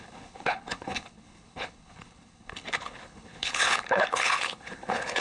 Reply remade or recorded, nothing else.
remade